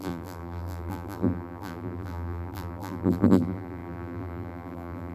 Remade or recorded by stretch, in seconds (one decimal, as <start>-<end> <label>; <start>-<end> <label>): 0.0-5.1 remade